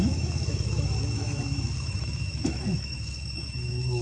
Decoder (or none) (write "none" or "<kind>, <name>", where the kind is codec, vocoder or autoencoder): autoencoder, DAC-VAE